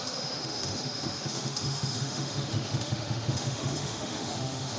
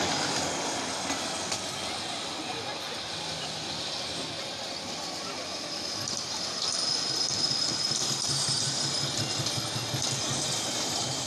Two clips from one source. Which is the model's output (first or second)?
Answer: first